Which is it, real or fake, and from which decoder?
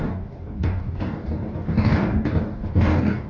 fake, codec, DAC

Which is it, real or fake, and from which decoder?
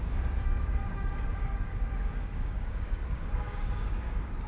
fake, codec, DAC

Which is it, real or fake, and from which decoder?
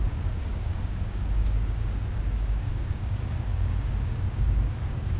fake, codec, DAC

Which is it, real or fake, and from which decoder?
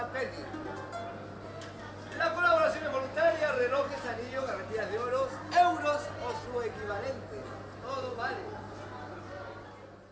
real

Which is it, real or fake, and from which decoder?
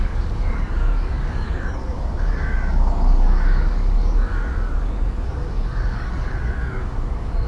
fake, codec, DAC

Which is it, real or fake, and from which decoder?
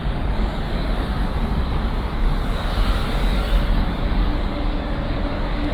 fake, codec, DAC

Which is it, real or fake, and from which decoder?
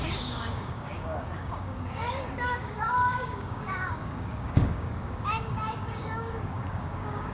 fake, codec, DAC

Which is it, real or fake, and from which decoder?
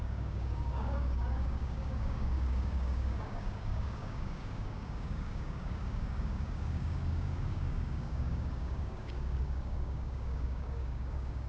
fake, codec, DAC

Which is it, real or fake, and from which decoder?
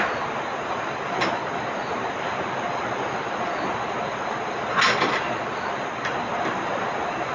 real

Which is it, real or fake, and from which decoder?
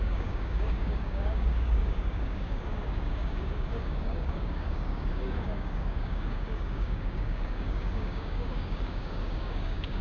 fake, codec, DAC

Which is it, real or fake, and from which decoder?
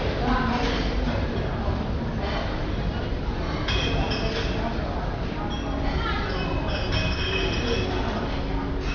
real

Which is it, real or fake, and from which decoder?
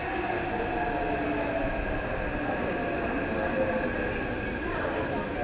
real